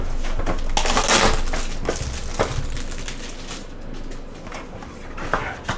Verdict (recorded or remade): recorded